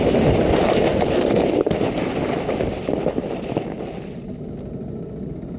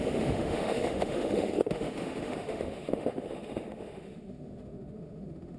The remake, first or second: second